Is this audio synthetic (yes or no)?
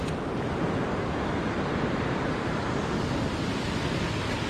no